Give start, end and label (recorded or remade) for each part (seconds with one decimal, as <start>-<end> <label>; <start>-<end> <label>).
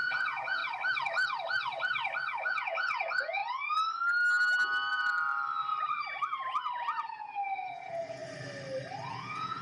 0.0-0.6 remade; 0.6-2.4 recorded; 2.4-3.4 remade; 3.4-7.7 recorded; 7.7-8.2 remade; 8.2-9.1 recorded; 9.1-9.6 remade